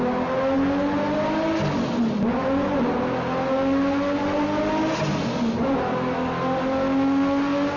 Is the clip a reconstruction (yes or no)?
no